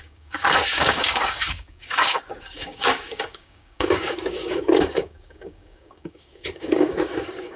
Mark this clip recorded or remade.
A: remade